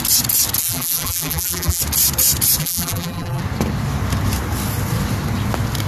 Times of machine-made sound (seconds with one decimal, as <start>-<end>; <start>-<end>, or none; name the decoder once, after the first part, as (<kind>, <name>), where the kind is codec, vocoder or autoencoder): 0.6-1.8 (vocoder, BigVGAN v2); 2.6-3.4